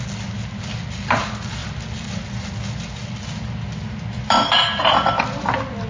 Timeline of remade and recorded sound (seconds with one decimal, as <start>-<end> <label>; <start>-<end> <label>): 0.0-5.9 recorded